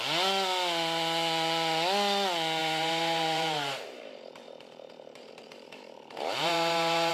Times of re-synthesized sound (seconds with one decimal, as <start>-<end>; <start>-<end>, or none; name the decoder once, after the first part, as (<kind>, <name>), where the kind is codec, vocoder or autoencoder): 2.6-7.1 (vocoder, BigVGAN v2)